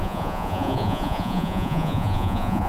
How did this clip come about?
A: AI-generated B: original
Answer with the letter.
A